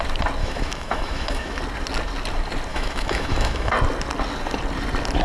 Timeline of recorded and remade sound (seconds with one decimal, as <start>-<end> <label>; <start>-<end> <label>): 0.0-0.4 recorded; 0.4-1.6 remade; 1.6-2.7 recorded; 2.7-3.7 remade; 3.7-5.2 recorded